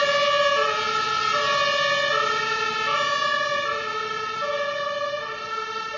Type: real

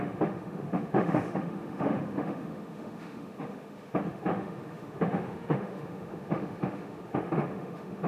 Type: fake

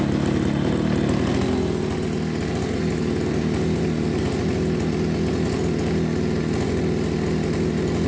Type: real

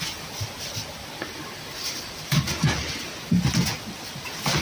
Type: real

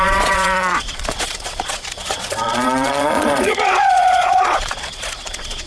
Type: fake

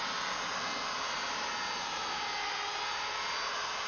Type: real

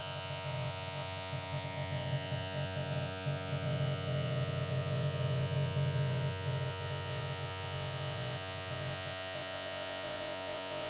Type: fake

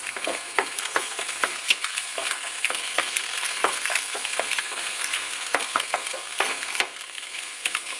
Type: fake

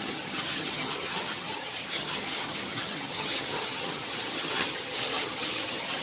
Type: fake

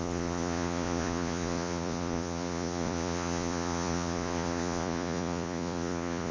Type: fake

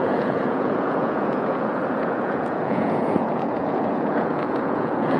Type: fake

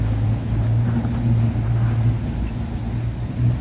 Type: real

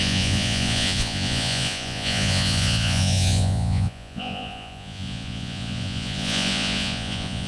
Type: fake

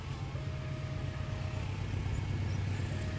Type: real